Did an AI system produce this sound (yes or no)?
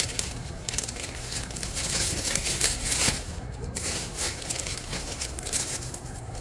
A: yes